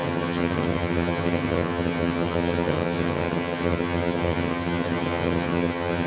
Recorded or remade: remade